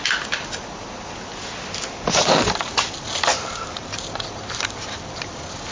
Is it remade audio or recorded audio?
recorded